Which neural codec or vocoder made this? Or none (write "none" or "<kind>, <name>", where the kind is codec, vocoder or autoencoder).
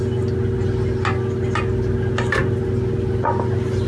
none